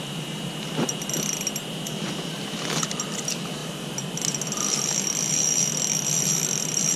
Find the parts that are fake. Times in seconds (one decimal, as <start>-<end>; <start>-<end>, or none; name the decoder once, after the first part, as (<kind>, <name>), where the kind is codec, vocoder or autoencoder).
none